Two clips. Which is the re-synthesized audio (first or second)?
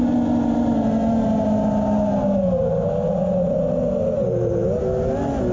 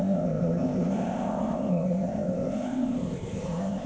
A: second